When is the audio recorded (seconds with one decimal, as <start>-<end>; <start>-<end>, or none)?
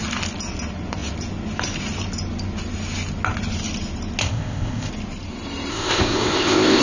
0.0-4.2; 4.9-5.7